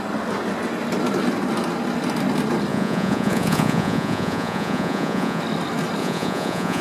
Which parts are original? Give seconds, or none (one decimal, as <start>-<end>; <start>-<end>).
0.0-2.7; 5.4-6.0